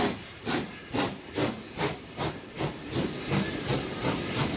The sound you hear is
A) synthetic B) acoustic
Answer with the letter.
A